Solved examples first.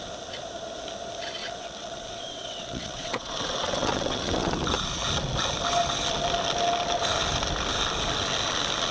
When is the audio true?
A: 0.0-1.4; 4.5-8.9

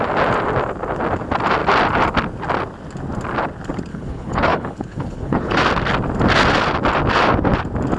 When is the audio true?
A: 0.0-3.9; 5.6-8.0

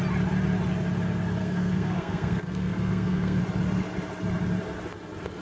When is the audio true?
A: 0.0-1.4; 3.4-5.4

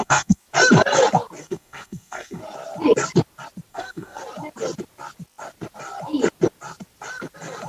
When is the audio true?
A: 0.4-1.4; 2.4-3.7; 4.2-7.7